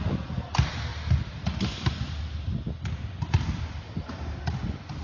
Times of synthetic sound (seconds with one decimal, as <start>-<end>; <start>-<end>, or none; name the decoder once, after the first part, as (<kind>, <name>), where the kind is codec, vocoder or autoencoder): none